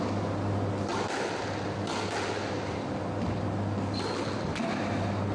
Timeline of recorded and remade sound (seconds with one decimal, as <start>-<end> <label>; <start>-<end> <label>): 0.0-5.3 recorded